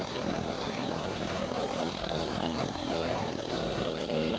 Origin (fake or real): fake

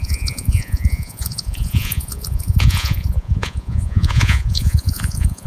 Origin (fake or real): fake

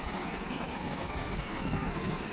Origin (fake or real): fake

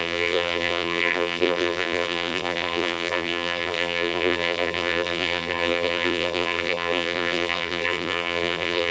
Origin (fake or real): fake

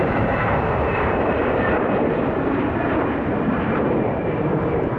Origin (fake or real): fake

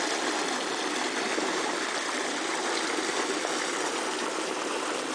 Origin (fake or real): real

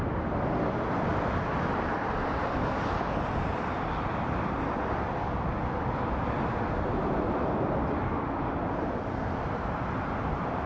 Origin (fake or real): real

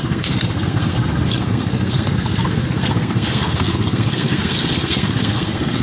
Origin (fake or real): fake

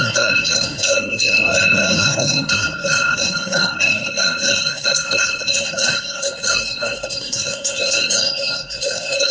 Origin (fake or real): fake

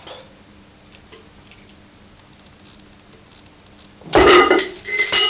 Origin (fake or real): real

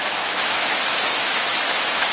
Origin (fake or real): fake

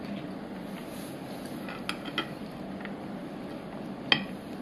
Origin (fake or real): real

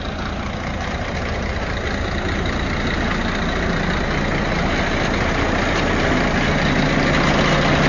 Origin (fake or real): real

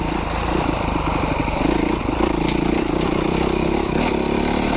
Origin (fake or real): fake